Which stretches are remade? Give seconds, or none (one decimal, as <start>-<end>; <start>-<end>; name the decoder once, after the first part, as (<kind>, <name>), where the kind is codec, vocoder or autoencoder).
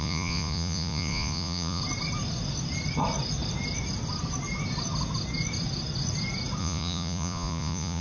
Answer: 0.0-1.8 (vocoder, Vocos); 6.6-8.0